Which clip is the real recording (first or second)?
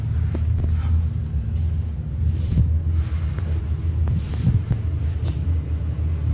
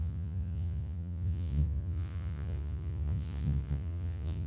first